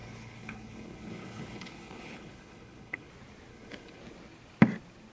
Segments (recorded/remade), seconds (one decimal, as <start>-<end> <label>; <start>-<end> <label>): 0.0-3.1 remade; 3.1-3.5 recorded; 3.5-4.0 remade; 4.0-5.1 recorded